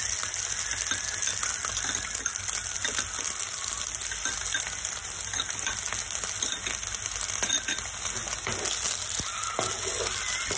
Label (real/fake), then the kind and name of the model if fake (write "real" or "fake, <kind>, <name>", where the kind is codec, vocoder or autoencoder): real